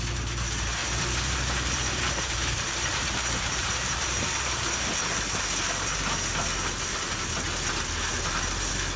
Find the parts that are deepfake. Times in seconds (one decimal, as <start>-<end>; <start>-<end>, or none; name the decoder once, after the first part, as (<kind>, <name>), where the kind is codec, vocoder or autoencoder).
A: 0.8-4.9 (vocoder, BigVGAN v2)